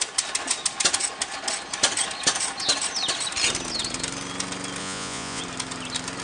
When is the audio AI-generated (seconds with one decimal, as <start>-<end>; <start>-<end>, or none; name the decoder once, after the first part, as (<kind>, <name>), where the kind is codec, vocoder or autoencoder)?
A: 4.8-5.4 (vocoder, Vocos)